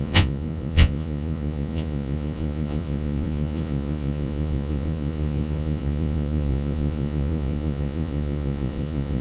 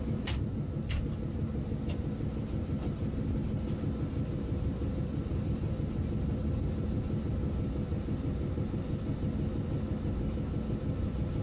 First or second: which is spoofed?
first